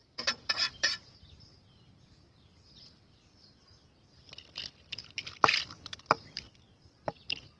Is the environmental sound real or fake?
fake